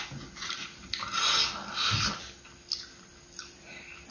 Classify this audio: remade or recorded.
recorded